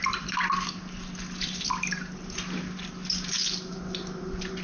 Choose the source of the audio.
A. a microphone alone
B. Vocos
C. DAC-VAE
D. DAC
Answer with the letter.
A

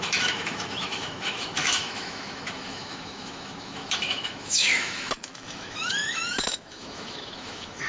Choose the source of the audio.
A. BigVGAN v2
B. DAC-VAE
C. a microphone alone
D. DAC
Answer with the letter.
B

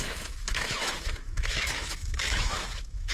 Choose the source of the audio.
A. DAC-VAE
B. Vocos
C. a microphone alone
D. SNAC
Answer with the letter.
A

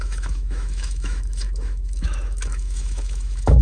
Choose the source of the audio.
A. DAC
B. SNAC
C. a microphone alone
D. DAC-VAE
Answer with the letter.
D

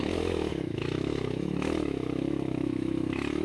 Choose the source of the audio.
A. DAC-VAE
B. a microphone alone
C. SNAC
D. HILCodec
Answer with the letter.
A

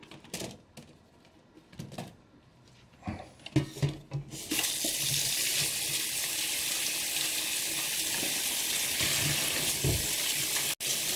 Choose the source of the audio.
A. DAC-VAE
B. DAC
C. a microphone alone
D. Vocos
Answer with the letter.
C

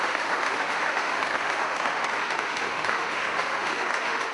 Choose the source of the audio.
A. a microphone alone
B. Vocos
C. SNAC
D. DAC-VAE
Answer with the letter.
D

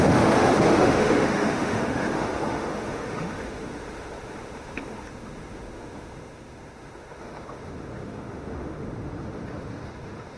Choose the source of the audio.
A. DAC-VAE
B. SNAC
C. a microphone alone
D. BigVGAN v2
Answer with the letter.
A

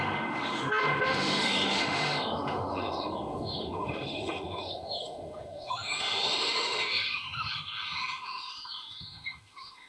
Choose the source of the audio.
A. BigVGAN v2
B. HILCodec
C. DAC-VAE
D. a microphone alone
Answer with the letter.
C